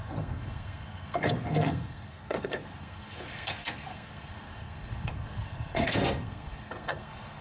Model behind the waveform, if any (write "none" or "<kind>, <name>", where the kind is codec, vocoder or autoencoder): codec, SNAC